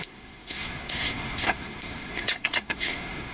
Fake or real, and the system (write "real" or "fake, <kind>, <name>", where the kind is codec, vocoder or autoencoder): fake, codec, SNAC